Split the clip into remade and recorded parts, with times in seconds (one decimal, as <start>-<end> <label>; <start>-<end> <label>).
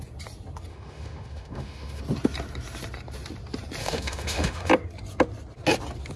0.0-0.7 recorded; 0.7-2.0 remade; 2.0-3.8 recorded; 3.8-4.7 remade; 4.7-6.2 recorded